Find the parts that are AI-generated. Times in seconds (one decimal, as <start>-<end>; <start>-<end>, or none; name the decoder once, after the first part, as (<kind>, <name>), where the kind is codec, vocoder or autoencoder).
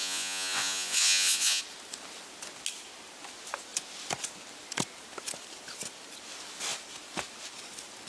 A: 0.0-1.6 (vocoder, Vocos)